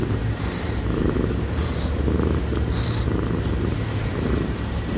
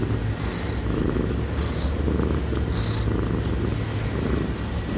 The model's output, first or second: first